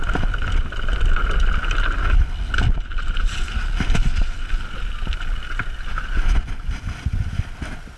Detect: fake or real real